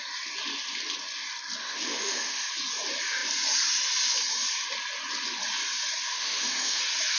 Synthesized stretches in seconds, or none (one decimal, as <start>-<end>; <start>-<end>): 1.6-2.5; 6.1-6.8